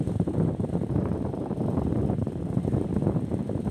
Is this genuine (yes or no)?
no